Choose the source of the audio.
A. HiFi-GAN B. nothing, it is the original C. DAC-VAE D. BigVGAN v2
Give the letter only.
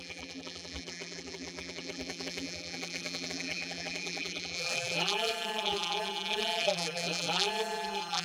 D